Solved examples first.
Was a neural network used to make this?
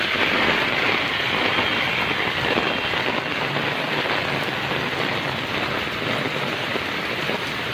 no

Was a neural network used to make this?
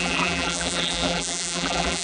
yes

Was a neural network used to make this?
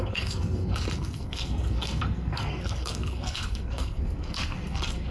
yes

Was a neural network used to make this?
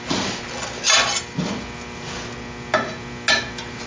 no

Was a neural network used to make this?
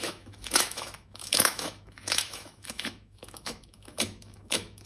yes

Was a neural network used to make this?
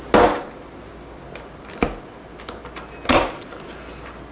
no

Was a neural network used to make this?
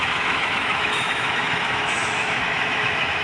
yes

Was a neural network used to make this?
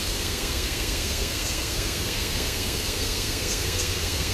yes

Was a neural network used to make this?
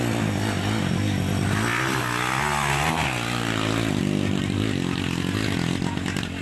no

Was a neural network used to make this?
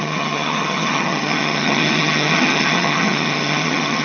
yes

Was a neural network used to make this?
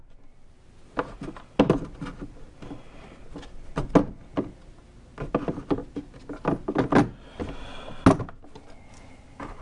no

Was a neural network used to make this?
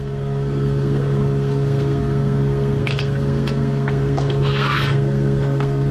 yes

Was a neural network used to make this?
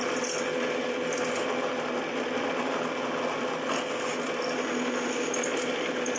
no